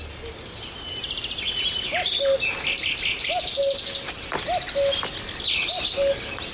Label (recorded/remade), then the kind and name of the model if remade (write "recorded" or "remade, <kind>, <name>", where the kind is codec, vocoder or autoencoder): recorded